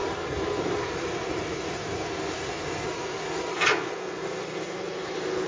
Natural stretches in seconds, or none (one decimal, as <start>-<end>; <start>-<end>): 0.0-5.5